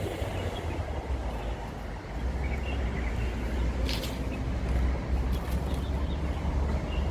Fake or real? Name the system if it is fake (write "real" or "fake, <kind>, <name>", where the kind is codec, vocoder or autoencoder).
real